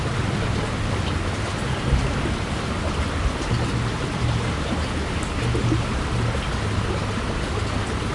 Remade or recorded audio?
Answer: recorded